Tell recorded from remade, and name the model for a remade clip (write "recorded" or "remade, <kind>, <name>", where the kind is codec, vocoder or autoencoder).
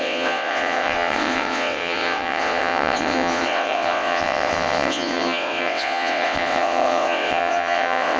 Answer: remade, vocoder, WaveNeXt